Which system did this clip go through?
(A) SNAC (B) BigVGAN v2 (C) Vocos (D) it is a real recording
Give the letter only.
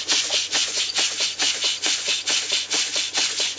C